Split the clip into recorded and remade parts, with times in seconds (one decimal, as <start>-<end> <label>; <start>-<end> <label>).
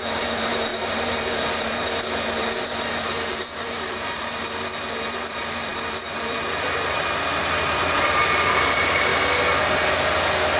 0.0-9.1 remade; 9.1-10.6 recorded